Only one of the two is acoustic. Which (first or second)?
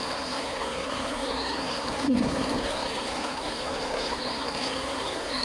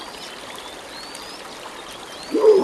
second